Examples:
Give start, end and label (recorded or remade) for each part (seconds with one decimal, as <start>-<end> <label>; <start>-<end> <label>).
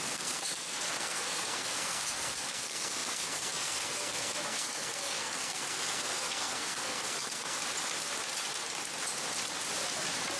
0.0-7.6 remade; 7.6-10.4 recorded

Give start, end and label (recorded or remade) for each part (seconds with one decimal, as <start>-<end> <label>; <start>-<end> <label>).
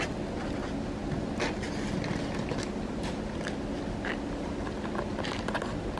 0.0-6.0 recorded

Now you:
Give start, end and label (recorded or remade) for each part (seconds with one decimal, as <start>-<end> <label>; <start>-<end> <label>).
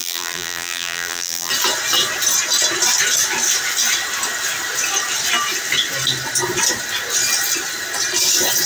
0.0-1.5 remade; 1.5-8.7 recorded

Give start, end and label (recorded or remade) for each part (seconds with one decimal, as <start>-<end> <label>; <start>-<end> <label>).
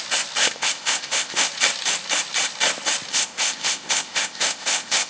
0.0-0.4 recorded; 0.4-1.5 remade; 1.5-3.1 recorded; 3.1-5.1 remade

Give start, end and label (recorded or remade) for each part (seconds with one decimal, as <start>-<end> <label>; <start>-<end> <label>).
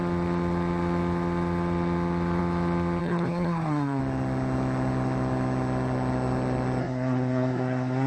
0.0-3.0 recorded; 3.0-4.0 remade; 4.0-6.8 recorded; 6.8-8.1 remade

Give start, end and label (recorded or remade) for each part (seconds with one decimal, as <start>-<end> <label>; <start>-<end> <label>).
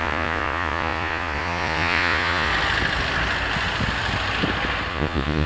0.0-2.5 remade; 2.5-4.9 recorded; 4.9-5.5 remade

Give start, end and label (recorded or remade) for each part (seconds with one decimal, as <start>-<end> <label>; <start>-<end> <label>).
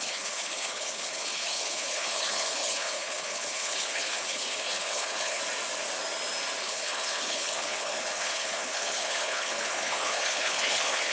0.0-5.4 remade; 5.4-6.6 recorded; 6.6-11.1 remade